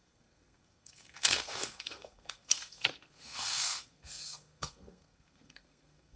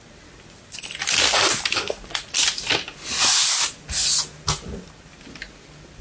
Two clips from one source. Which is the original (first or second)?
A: second